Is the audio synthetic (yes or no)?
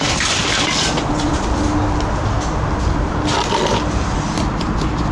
no